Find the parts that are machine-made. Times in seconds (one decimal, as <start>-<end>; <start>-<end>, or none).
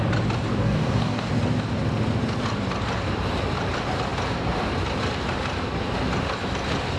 0.5-1.3